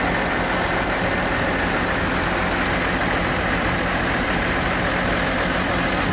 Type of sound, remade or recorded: recorded